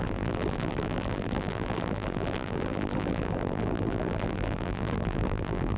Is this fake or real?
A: fake